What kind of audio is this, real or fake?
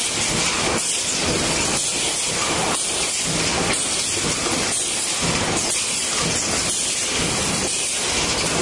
real